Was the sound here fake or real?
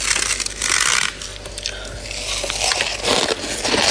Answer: real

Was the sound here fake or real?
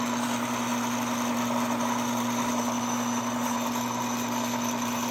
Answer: fake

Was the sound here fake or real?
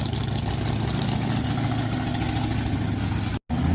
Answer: real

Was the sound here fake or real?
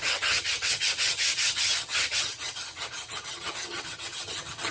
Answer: fake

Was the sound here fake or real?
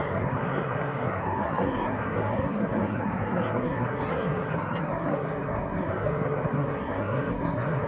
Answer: fake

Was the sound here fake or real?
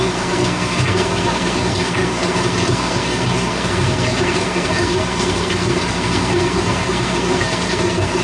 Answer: fake